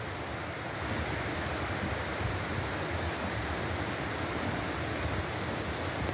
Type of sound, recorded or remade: recorded